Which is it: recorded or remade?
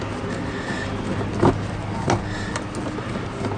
recorded